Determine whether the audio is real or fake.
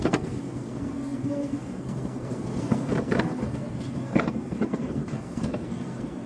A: fake